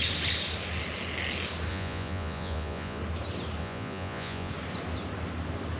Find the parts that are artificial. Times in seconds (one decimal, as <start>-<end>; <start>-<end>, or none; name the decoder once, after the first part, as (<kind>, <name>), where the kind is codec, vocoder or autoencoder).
1.7-3.0 (vocoder, Vocos); 3.6-4.5